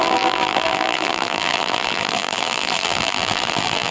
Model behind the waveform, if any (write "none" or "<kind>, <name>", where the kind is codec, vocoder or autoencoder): vocoder, BigVGAN v2